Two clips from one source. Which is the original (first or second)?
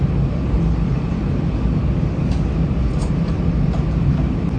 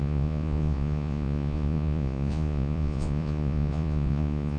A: first